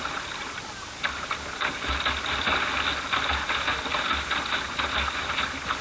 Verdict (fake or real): real